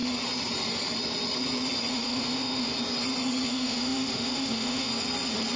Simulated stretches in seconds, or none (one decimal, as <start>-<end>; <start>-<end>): 1.9-2.7; 3.5-4.9